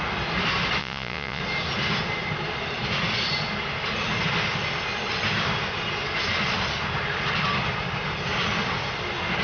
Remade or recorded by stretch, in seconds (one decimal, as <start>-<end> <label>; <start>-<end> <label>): 0.0-0.8 recorded; 0.8-1.4 remade; 1.4-9.4 recorded

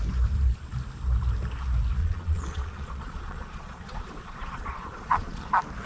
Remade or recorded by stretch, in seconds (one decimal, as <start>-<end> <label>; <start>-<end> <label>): 0.0-2.0 recorded; 2.0-5.5 remade; 5.5-5.9 recorded

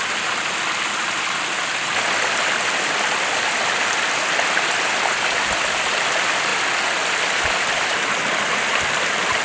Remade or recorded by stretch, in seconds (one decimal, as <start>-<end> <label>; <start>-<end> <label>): 0.0-9.4 recorded

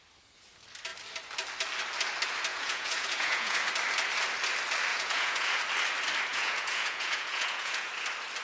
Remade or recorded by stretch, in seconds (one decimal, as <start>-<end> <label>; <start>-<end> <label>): 0.0-2.5 recorded; 2.5-3.6 remade; 3.6-4.9 recorded; 4.9-5.6 remade; 5.6-6.3 recorded; 6.3-7.9 remade; 7.9-8.4 recorded

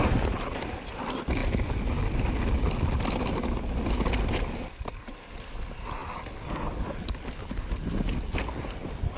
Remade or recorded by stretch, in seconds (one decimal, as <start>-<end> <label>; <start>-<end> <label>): 0.0-9.2 recorded

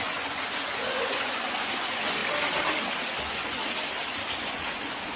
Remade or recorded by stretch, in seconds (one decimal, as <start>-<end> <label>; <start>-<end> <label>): 0.0-2.2 remade; 2.2-3.0 recorded; 3.0-3.6 remade; 3.6-4.4 recorded; 4.4-5.2 remade